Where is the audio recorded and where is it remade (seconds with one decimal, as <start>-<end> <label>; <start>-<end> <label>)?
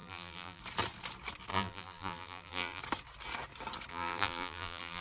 0.0-0.6 remade; 0.6-1.5 recorded; 1.5-2.8 remade; 2.8-3.9 recorded; 3.9-5.0 remade